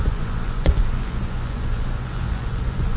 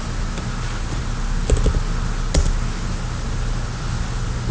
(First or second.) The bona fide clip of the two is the second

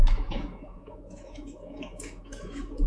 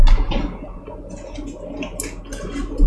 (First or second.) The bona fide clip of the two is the second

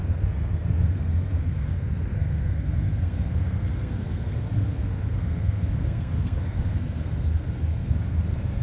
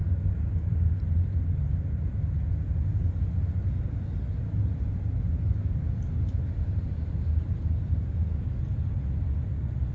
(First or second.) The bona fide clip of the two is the second